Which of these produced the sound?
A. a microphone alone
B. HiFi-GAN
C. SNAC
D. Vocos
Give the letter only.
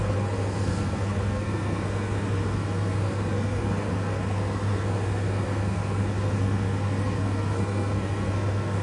C